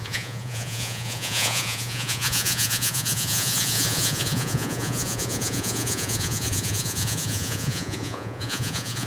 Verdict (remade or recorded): remade